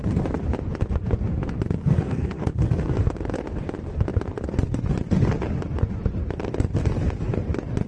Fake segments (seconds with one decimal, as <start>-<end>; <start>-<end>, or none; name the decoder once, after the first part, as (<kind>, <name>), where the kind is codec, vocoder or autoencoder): 1.8-2.5 (codec, SNAC)